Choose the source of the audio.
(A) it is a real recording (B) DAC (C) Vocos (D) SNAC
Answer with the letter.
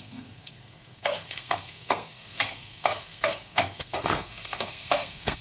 D